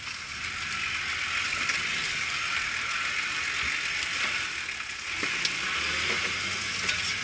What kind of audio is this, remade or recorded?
recorded